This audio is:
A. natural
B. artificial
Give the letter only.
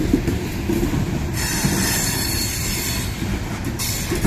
B